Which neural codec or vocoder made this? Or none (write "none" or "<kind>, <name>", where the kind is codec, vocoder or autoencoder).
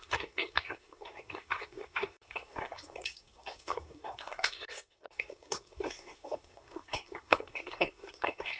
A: codec, SNAC